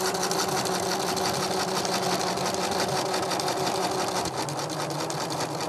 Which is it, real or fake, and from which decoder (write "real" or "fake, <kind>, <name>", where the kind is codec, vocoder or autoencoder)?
real